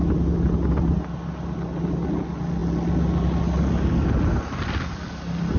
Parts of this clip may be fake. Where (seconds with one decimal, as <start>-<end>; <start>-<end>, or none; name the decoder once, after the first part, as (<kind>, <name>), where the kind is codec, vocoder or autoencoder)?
none